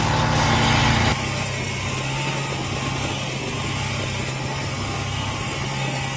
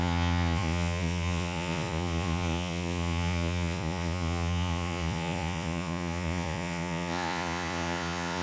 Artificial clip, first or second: second